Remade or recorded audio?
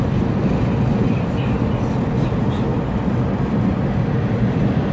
recorded